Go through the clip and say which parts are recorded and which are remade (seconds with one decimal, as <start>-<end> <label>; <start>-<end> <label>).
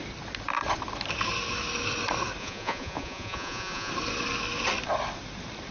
0.0-2.4 recorded; 2.4-3.9 remade; 3.9-5.7 recorded